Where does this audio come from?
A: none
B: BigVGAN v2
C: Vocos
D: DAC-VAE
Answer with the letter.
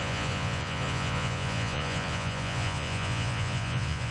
C